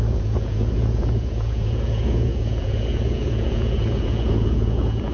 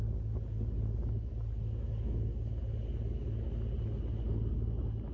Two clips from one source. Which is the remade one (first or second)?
first